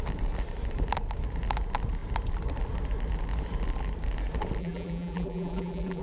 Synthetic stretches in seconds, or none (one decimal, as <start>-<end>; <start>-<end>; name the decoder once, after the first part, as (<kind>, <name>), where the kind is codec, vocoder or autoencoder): 4.6-6.0 (vocoder, BigVGAN v2)